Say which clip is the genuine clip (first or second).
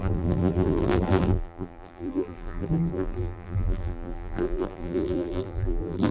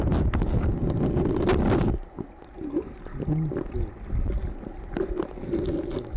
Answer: second